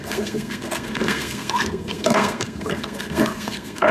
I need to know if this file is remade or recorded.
remade